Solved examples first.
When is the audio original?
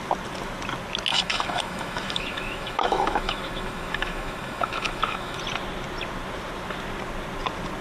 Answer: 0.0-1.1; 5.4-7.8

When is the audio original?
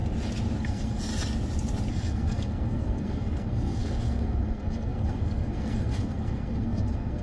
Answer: 0.0-0.6; 1.1-1.9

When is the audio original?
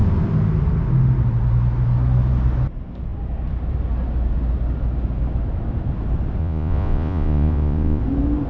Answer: 0.0-6.4; 8.0-8.5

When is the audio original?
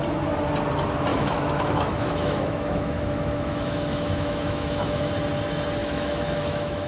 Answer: 0.0-1.1; 5.1-5.8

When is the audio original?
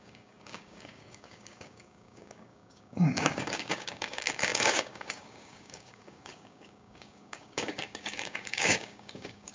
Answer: none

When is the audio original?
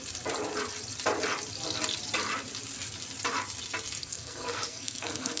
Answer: 0.0-4.0